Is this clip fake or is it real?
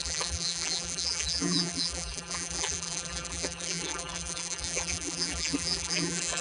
fake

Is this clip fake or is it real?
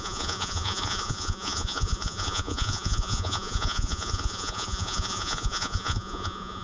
fake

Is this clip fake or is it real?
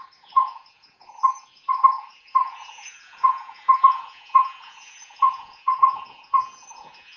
fake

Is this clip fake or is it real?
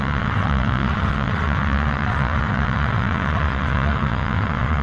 fake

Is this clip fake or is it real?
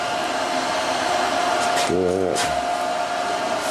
real